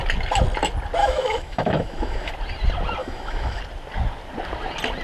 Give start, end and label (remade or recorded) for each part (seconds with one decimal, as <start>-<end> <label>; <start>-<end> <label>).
0.0-1.0 recorded; 1.0-2.3 remade; 2.3-3.0 recorded; 3.0-3.6 remade; 3.6-5.0 recorded